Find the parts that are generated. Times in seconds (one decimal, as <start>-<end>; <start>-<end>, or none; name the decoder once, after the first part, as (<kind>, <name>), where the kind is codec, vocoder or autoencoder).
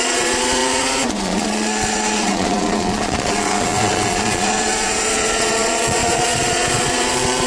0.0-7.5 (vocoder, Vocos)